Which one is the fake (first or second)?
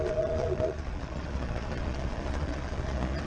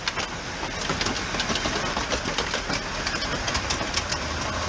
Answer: first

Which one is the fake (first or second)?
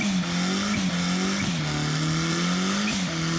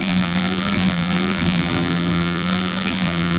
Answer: second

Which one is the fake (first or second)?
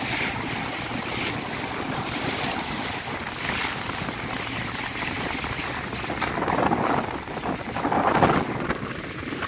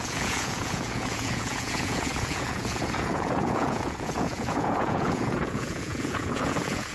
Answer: second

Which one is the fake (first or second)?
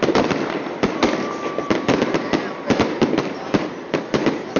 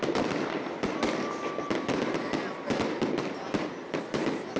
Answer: first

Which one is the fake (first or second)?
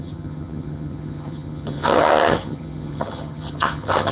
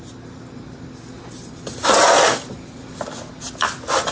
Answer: first